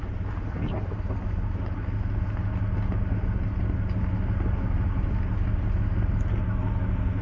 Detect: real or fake real